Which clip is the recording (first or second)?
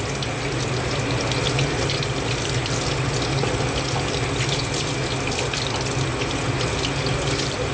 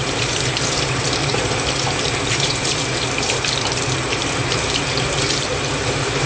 first